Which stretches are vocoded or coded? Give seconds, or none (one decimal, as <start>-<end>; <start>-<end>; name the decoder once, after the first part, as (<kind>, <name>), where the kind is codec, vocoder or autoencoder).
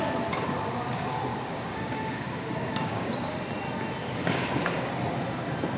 1.3-3.3 (codec, DAC); 4.0-4.9